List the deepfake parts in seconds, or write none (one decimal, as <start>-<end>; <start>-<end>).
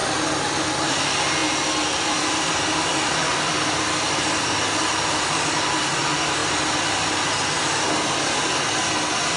0.0-6.4